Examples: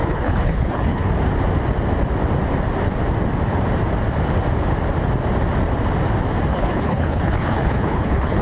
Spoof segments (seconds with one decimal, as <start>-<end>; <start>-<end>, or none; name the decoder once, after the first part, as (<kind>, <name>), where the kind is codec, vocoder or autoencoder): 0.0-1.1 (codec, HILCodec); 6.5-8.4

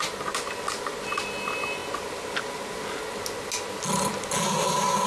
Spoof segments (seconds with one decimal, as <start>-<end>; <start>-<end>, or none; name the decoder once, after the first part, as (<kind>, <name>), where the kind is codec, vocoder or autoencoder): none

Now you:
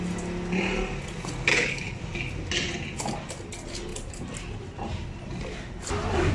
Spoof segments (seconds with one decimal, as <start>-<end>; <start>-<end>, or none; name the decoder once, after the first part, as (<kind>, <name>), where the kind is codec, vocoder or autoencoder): 1.5-2.0 (codec, HILCodec)

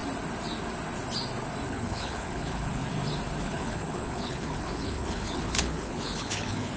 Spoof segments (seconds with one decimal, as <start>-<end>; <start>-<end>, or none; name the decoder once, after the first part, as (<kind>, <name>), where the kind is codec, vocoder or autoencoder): 1.7-2.8 (codec, HILCodec); 3.4-6.8